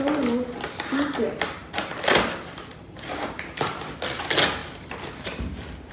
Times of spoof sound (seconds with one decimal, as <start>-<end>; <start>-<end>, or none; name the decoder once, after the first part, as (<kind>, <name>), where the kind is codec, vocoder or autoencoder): 1.6-3.0 (vocoder, BigVGAN v2); 4.6-5.9